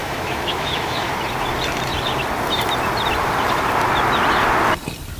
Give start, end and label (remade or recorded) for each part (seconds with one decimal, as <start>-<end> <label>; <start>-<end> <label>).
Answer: 0.0-1.1 remade; 1.1-5.2 recorded